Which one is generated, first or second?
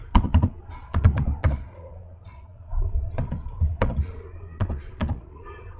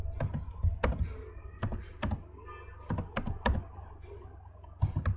first